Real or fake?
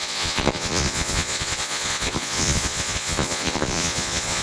fake